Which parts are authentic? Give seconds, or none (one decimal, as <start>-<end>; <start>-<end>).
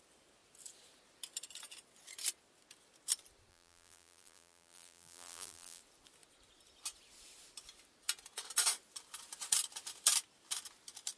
0.0-3.5; 5.8-11.2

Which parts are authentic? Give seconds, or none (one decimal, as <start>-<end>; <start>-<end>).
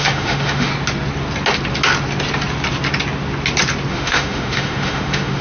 0.7-3.9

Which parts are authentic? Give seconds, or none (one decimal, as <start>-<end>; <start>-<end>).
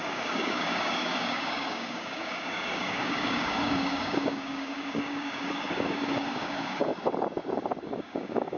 6.9-7.8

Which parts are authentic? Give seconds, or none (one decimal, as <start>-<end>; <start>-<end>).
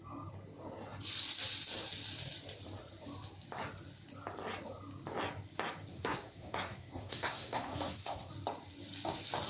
0.0-5.9; 8.3-9.5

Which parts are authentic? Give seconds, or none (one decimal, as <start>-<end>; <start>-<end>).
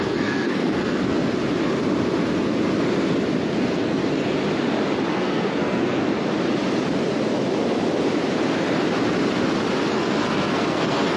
1.2-3.5; 4.0-5.1; 6.0-9.9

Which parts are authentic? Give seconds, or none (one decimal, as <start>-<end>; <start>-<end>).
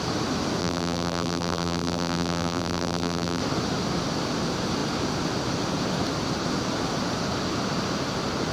0.0-0.6; 3.4-8.5